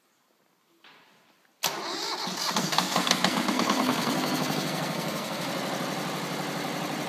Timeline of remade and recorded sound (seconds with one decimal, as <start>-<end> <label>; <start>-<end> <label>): 0.0-2.6 recorded; 2.6-5.5 remade; 5.5-7.1 recorded